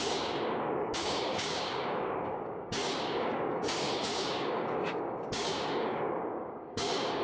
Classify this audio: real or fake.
fake